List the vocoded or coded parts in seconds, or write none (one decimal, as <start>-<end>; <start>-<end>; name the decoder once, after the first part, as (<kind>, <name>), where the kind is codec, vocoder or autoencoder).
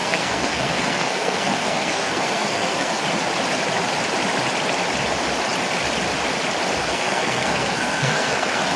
0.0-3.0 (codec, SNAC); 6.8-8.8